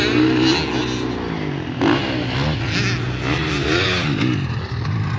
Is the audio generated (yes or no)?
no